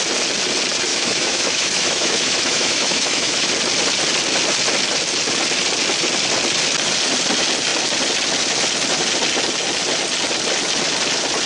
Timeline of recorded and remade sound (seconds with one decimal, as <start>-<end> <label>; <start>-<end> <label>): 0.0-0.9 recorded; 0.9-3.5 remade; 3.5-11.5 recorded